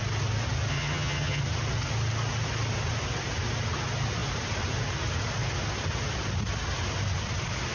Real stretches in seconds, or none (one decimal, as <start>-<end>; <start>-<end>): 0.0-0.7; 1.4-7.7